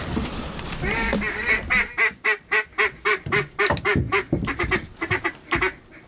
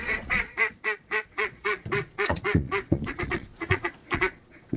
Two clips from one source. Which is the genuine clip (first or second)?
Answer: first